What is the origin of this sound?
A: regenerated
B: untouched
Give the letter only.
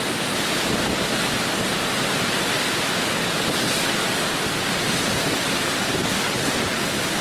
B